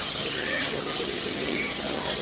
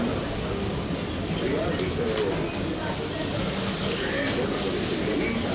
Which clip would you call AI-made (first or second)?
first